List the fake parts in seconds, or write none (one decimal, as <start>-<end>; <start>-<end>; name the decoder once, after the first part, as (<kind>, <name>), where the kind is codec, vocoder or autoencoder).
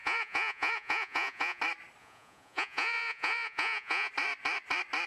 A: 0.0-1.6 (vocoder, Vocos); 2.0-4.1